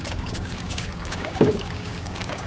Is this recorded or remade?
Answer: remade